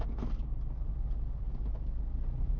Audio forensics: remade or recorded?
recorded